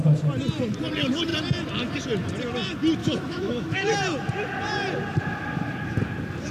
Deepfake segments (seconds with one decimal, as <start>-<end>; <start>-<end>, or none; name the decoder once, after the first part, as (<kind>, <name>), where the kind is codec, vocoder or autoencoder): 3.0-3.9 (autoencoder, DAC-VAE)